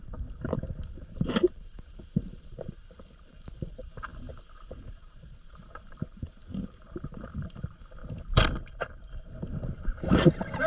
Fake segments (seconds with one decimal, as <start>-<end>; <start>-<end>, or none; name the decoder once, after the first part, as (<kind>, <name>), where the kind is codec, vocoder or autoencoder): 0.0-4.1 (vocoder, BigVGAN v2); 4.9-8.0; 9.1-10.7

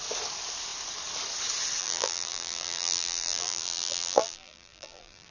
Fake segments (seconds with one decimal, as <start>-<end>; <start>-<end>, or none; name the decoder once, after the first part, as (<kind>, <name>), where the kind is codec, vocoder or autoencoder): 1.8-5.3 (vocoder, BigVGAN v2)

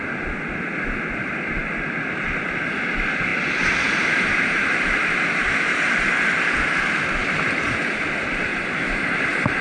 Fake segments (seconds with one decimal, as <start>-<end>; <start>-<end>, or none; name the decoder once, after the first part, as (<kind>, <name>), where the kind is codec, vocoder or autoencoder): 3.3-6.1 (vocoder, BigVGAN v2); 7.2-7.8; 8.5-9.6

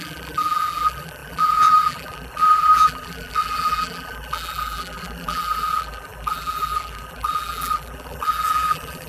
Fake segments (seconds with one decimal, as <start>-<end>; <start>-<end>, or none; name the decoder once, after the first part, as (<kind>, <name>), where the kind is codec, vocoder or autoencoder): 0.0-9.1 (vocoder, BigVGAN v2)